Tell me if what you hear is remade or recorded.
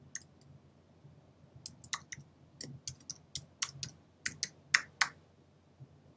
recorded